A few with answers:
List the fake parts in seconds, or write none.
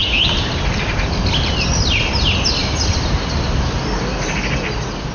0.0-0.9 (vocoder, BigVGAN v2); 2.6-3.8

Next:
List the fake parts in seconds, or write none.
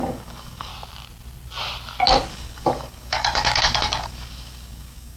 0.0-0.7 (codec, DAC); 2.3-5.2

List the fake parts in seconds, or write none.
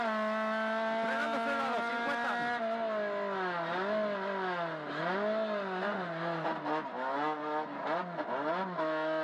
none